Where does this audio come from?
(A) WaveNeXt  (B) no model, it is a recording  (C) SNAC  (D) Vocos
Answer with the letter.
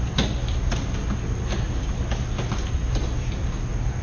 B